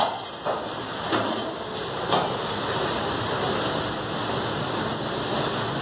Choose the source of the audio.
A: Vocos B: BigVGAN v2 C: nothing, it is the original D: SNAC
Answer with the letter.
C